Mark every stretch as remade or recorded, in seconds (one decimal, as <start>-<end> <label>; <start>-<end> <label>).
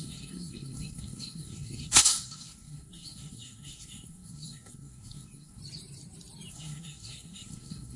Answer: 0.0-5.6 remade; 5.6-6.5 recorded; 6.5-8.0 remade